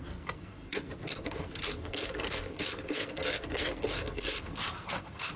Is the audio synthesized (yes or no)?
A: yes